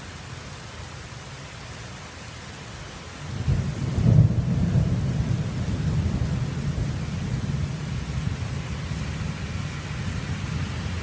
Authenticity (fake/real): real